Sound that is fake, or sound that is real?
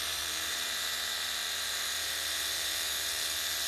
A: fake